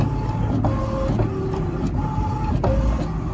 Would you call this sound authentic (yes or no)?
yes